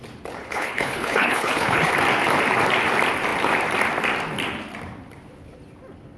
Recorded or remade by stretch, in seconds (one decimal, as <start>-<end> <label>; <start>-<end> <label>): 0.0-0.4 recorded; 0.4-1.9 remade; 1.9-6.2 recorded